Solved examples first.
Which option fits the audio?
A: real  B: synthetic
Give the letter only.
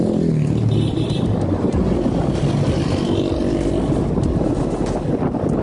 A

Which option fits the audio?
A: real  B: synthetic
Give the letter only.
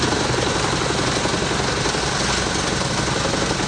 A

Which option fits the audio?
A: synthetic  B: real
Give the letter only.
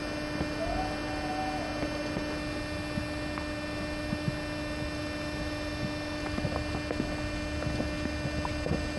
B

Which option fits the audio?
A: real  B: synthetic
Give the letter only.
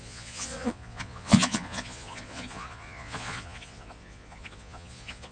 B